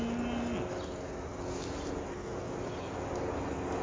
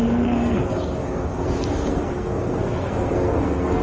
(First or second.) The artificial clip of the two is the second